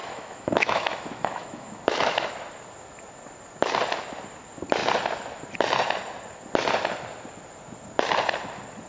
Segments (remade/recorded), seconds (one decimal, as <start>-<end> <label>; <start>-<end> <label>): 0.0-2.3 remade; 2.3-8.9 recorded